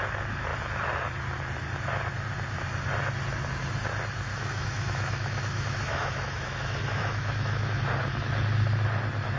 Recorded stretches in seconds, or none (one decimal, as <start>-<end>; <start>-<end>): 0.0-4.3; 7.8-9.4